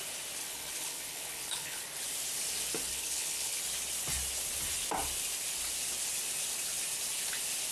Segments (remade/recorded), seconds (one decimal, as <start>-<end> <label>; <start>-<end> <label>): 0.0-0.4 recorded; 0.4-1.8 remade; 1.8-2.9 recorded; 2.9-3.6 remade; 3.6-7.7 recorded